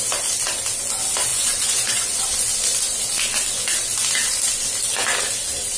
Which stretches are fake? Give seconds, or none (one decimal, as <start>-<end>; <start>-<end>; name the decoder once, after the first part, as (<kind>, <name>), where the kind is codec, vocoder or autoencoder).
1.3-2.2 (vocoder, Vocos)